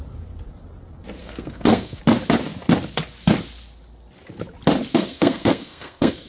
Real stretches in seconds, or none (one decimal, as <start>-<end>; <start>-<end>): 0.0-1.2; 2.0-4.9